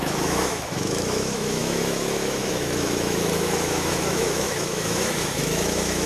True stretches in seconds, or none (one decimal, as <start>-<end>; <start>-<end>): none